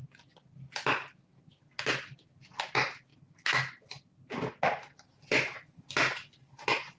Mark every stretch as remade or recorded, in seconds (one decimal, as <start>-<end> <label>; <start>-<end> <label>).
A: 0.0-7.0 recorded